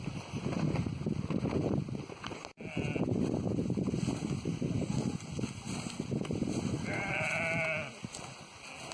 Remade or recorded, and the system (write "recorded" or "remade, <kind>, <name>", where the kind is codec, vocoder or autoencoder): recorded